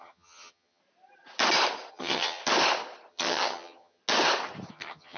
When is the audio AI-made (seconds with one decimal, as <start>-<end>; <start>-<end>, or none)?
0.0-0.8; 1.9-2.4; 3.1-4.0; 4.7-5.2